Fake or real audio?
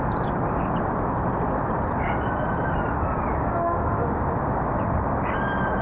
real